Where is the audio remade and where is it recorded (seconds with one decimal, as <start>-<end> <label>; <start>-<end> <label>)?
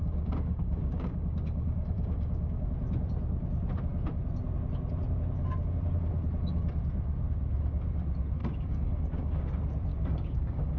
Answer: 0.0-2.7 remade; 2.7-8.4 recorded; 8.4-9.4 remade; 9.4-9.9 recorded; 9.9-10.8 remade